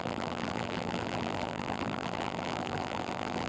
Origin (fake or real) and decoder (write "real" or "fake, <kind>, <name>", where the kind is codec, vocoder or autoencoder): fake, vocoder, BigVGAN v2